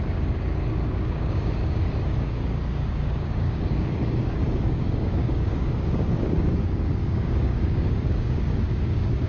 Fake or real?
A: fake